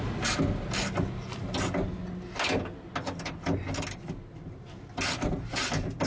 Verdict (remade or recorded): recorded